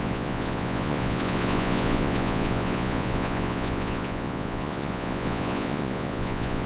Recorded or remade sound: remade